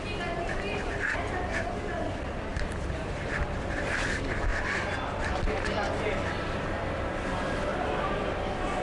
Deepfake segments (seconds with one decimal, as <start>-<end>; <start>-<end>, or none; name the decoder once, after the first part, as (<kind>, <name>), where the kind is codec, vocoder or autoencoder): none